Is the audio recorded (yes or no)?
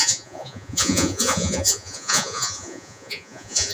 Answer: no